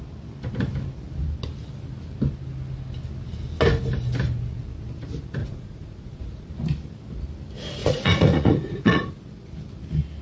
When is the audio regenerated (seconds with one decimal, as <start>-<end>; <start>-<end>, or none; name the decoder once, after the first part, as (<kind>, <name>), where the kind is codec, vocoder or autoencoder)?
5.4-6.5 (vocoder, Vocos); 7.8-9.2